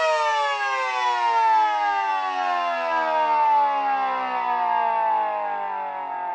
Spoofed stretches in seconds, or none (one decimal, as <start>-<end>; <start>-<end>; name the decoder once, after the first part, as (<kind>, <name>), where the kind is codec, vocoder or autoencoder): none